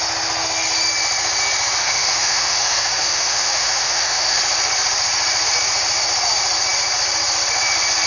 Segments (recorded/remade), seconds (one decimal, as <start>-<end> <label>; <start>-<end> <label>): 0.0-1.8 recorded; 1.8-4.4 remade; 4.4-8.1 recorded